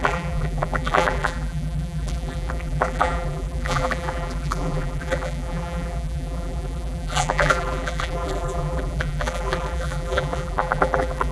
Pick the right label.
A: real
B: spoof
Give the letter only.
B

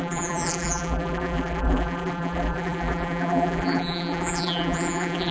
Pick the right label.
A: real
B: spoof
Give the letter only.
B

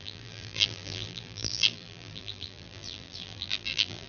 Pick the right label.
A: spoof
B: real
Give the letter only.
A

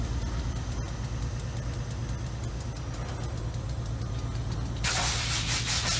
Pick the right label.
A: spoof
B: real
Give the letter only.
B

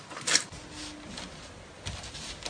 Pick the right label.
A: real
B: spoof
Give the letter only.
A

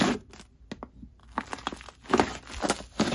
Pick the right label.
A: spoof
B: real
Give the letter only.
B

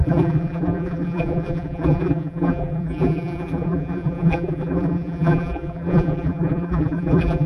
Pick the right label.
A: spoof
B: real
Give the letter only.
A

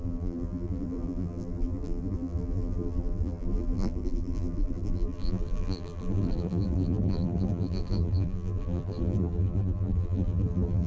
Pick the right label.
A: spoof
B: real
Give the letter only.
A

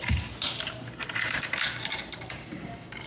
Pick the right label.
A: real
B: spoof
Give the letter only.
B